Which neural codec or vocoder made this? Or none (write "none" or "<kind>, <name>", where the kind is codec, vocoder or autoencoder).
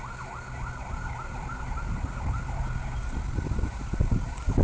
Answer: none